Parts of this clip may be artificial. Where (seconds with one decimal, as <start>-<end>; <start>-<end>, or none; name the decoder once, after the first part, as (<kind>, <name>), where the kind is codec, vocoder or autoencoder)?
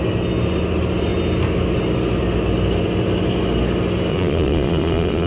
4.1-5.3 (vocoder, Vocos)